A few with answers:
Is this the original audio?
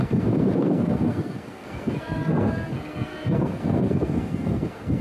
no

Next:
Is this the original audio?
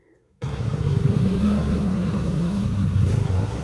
no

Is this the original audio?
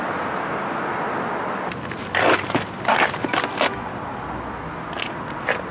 yes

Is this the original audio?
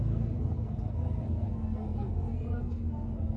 no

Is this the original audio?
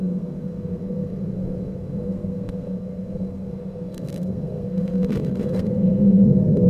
no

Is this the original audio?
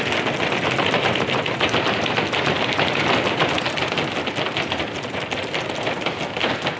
yes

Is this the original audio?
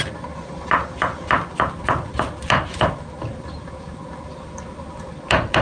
yes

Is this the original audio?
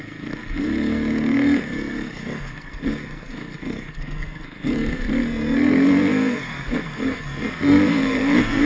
no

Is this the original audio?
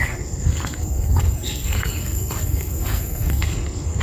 no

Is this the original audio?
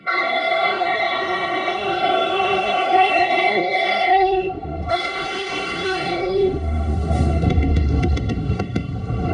no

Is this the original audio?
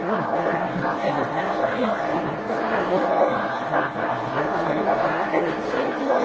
no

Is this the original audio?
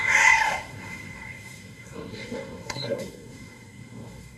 no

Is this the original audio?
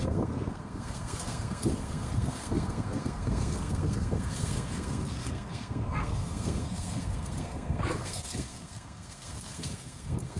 no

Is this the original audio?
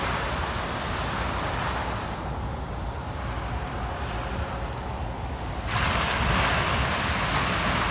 yes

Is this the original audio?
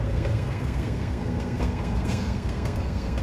no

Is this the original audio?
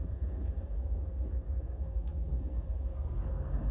no